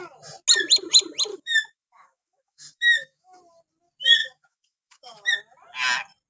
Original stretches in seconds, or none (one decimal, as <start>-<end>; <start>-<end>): 0.0-1.3; 3.4-4.2; 5.3-6.3